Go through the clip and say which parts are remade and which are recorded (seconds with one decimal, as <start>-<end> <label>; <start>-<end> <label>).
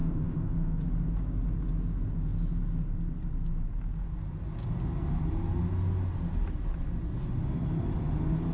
0.0-0.8 remade; 0.8-8.5 recorded